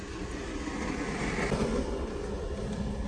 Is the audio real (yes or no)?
yes